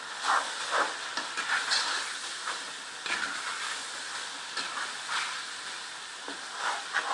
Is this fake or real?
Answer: real